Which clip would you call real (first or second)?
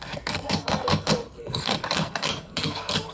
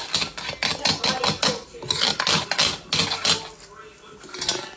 second